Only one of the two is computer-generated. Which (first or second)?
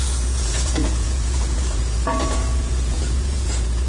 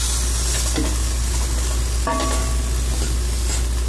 first